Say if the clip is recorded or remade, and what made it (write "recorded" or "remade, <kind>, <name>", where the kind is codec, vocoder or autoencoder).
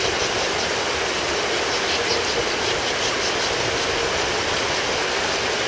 recorded